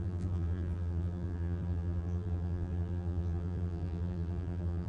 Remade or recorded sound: remade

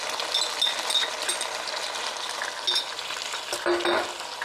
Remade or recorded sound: recorded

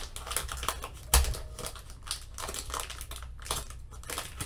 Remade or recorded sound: recorded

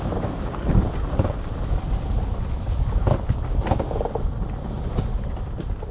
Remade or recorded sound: recorded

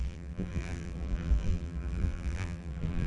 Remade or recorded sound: remade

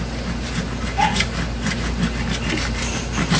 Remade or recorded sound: recorded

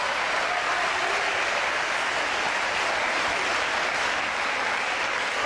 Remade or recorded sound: recorded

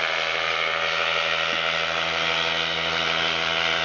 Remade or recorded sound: recorded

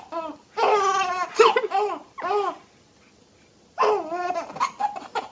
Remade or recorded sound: recorded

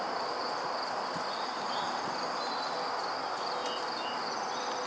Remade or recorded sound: recorded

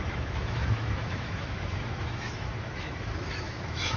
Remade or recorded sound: remade